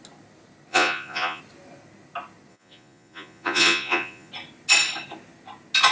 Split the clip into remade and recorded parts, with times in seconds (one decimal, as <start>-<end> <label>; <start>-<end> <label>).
0.0-0.7 recorded; 0.7-1.4 remade; 1.4-2.5 recorded; 2.5-4.3 remade; 4.3-5.9 recorded

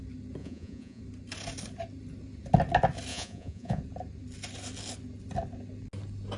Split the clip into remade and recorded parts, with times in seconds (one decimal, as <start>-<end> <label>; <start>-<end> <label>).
0.0-0.4 recorded; 0.4-1.0 remade; 1.0-3.1 recorded; 3.1-3.8 remade; 3.8-6.4 recorded

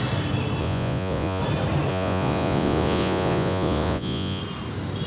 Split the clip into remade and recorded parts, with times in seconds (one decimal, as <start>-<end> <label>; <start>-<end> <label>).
0.0-0.6 recorded; 0.6-1.4 remade; 1.4-1.9 recorded; 1.9-4.4 remade; 4.4-5.1 recorded

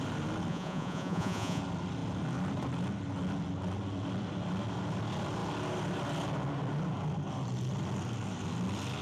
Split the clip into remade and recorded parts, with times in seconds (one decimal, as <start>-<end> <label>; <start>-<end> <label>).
0.0-0.5 recorded; 0.5-1.6 remade; 1.6-9.0 recorded

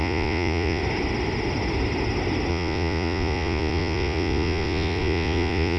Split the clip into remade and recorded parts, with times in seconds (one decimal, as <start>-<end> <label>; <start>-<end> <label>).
0.0-0.8 remade; 0.8-2.5 recorded; 2.5-5.8 remade

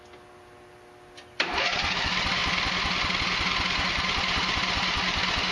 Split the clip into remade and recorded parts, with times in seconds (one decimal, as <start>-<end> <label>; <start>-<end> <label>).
0.0-5.5 recorded

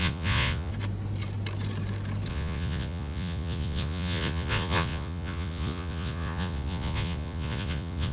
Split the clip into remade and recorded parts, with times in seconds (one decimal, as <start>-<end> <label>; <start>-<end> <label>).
0.0-0.7 remade; 0.7-2.3 recorded; 2.3-8.1 remade